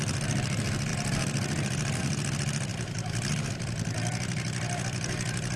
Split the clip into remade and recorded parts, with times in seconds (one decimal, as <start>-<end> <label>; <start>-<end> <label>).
0.0-2.7 remade; 2.7-4.8 recorded; 4.8-5.6 remade